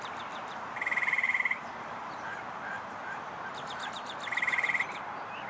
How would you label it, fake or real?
fake